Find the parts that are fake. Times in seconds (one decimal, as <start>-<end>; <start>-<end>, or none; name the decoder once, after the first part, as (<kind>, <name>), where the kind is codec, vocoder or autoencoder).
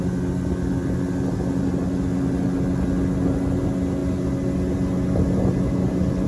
none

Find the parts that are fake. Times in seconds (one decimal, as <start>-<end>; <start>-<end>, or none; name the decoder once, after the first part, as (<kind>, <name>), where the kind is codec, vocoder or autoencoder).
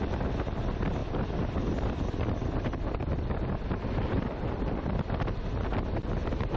1.0-5.0 (vocoder, BigVGAN v2)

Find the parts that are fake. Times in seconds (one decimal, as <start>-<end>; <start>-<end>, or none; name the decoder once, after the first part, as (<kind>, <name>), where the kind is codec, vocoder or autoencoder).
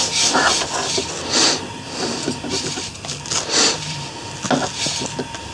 0.8-4.1 (vocoder, BigVGAN v2)